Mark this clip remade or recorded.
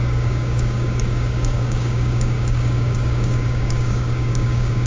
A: remade